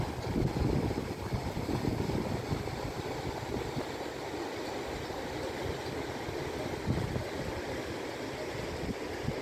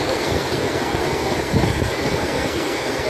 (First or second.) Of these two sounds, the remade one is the second